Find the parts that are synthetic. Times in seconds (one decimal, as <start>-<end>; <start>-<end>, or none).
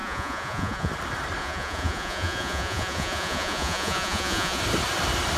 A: 0.0-0.9; 1.4-4.6